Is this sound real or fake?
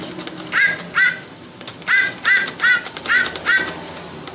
real